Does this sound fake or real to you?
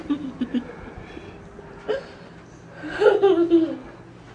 real